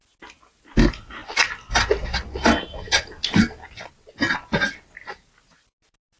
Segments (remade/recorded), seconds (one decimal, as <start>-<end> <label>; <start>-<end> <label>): 0.0-6.2 recorded